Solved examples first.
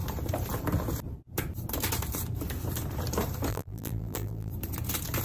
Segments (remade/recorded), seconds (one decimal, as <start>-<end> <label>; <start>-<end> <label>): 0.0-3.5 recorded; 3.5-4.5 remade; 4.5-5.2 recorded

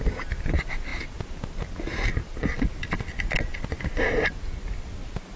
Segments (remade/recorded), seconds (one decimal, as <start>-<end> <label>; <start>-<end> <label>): 0.0-5.4 recorded

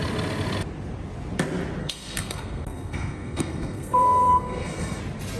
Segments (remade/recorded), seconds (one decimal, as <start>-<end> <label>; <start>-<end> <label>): 0.0-1.8 recorded; 1.8-5.0 remade; 5.0-5.4 recorded